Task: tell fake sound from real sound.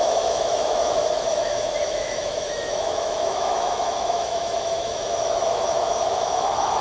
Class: fake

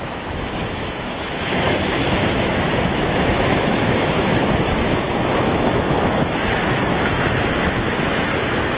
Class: fake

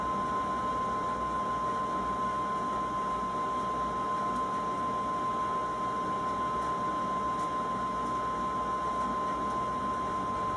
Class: real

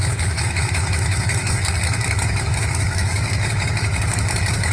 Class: fake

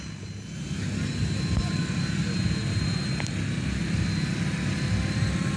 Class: real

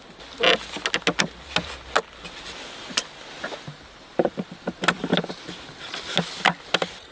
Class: real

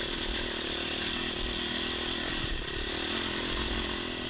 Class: real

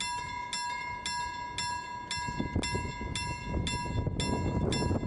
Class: real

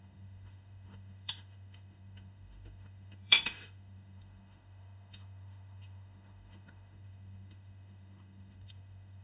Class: fake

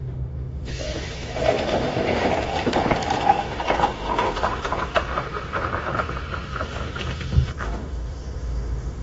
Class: fake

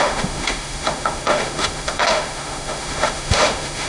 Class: fake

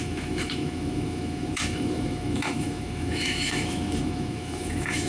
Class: fake